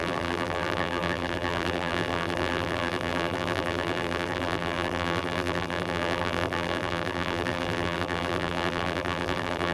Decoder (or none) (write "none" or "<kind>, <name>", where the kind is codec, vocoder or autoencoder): vocoder, BigVGAN v2